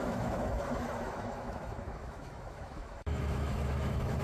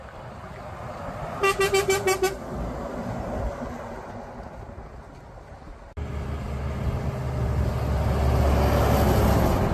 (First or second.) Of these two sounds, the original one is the second